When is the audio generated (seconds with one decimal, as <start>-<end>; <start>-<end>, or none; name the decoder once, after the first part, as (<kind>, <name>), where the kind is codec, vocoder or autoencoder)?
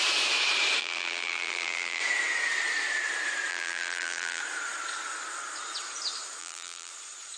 0.8-2.0 (vocoder, BigVGAN v2); 3.5-4.4; 6.4-6.9